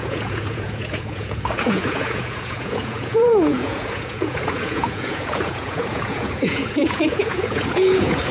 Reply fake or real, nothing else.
fake